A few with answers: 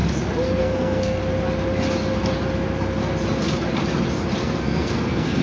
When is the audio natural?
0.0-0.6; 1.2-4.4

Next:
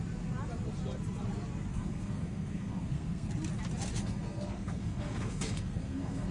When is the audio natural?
0.0-1.7; 3.3-4.0